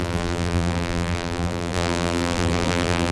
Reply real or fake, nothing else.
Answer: fake